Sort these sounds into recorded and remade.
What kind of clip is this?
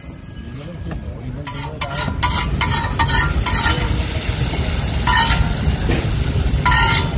recorded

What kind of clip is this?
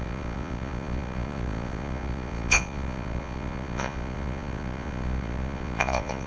remade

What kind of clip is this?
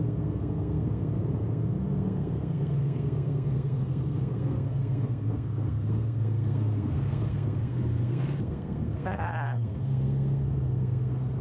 remade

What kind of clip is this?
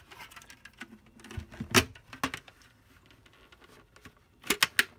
recorded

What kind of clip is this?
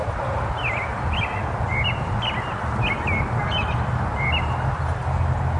recorded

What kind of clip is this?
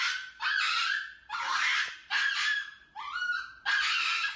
recorded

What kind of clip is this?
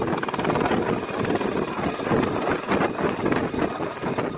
recorded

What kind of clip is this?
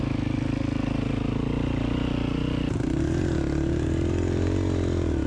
recorded